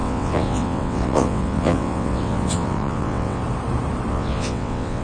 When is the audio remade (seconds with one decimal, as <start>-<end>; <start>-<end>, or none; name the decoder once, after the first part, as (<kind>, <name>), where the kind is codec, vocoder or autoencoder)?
0.0-3.4 (vocoder, WaveNeXt); 4.1-5.0

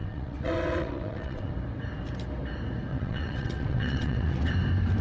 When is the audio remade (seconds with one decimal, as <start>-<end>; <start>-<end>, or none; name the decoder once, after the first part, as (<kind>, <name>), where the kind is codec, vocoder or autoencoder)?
0.0-1.5 (vocoder, WaveNeXt); 2.9-4.5

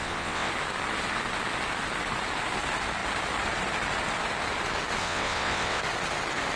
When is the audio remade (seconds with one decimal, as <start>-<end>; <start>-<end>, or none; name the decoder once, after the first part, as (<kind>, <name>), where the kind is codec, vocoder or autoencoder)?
0.0-0.5 (vocoder, WaveNeXt); 5.0-5.8

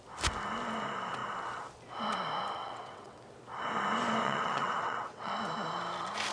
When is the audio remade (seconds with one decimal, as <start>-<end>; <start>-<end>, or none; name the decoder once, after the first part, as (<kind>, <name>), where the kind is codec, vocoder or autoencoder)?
2.6-3.2 (vocoder, WaveNeXt); 4.2-5.3

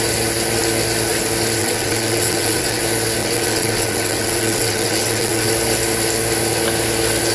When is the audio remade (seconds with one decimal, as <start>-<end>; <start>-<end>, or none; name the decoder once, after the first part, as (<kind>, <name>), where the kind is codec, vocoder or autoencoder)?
1.6-2.8 (vocoder, WaveNeXt); 3.2-5.5

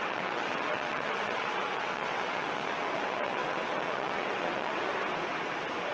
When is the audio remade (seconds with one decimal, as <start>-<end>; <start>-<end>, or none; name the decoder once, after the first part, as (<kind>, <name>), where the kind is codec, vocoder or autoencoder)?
0.0-4.9 (vocoder, WaveNeXt)

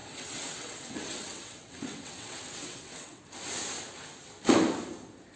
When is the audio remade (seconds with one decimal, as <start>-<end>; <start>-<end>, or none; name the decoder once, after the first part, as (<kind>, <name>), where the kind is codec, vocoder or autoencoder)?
0.0-3.2 (vocoder, WaveNeXt)

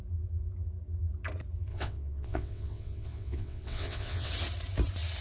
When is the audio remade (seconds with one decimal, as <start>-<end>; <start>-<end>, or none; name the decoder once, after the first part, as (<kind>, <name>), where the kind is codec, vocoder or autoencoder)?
1.7-4.3 (vocoder, WaveNeXt)